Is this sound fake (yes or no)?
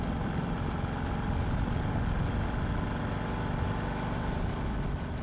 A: no